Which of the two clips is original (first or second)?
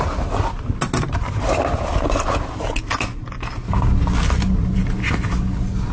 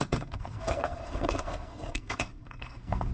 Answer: first